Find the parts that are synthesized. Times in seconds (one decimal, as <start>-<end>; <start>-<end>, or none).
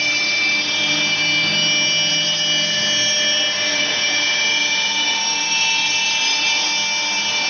3.7-6.7